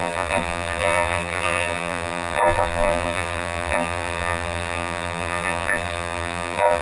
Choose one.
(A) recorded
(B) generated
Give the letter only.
B